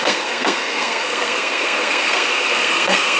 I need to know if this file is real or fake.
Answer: fake